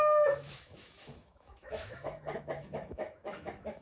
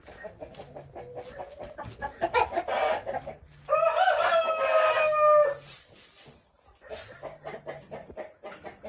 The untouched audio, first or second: second